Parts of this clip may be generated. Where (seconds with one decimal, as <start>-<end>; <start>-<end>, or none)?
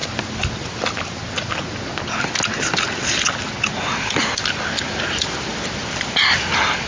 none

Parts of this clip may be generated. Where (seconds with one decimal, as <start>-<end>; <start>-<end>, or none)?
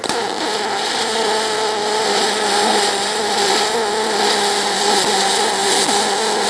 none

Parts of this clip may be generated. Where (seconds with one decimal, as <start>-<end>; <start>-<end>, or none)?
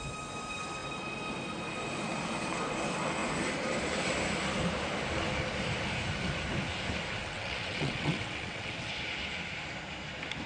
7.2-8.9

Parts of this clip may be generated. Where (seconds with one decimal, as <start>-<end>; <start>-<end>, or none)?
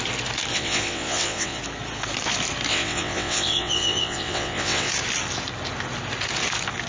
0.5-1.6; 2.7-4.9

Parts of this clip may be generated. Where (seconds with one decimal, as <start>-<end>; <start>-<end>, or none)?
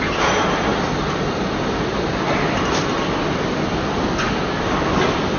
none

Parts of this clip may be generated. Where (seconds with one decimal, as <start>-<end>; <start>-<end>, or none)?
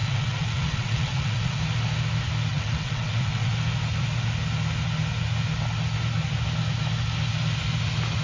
0.0-1.6; 2.5-3.5